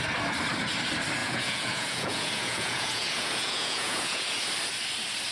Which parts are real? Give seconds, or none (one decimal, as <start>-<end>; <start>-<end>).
0.0-1.2; 4.4-5.3